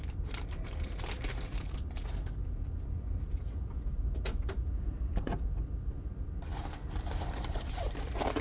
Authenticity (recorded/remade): remade